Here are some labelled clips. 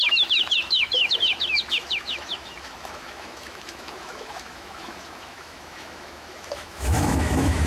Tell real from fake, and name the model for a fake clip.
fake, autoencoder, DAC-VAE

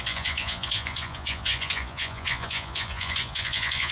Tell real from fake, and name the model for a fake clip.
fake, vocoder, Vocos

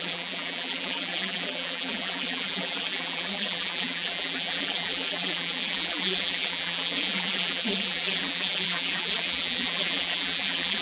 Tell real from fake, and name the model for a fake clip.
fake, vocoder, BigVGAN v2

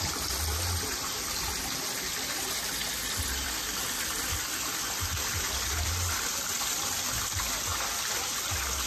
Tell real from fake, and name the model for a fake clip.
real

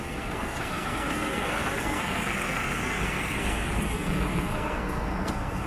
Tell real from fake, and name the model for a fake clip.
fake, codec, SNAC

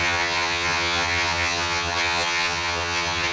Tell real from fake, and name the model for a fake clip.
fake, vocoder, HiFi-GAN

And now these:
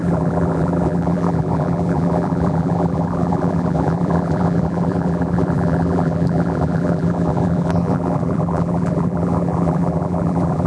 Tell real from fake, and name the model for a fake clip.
fake, vocoder, BigVGAN v2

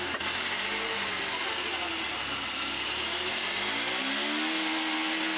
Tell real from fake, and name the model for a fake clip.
real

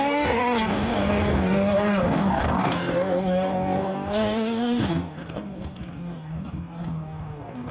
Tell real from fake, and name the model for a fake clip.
fake, codec, DAC